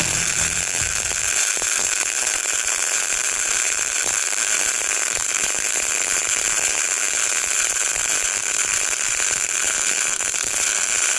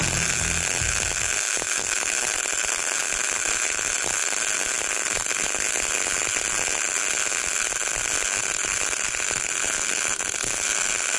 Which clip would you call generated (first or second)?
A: first